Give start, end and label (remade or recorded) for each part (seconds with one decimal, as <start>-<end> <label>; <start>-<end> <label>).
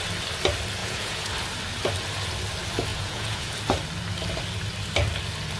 0.0-0.8 recorded; 0.8-1.3 remade; 1.3-2.9 recorded; 2.9-3.5 remade; 3.5-5.6 recorded